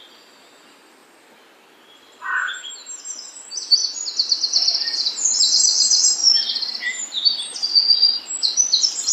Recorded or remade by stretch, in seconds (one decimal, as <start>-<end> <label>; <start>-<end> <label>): 0.0-6.2 recorded; 6.2-6.8 remade; 6.8-7.9 recorded; 7.9-8.5 remade; 8.5-9.1 recorded